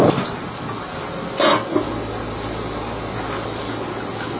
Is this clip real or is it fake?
real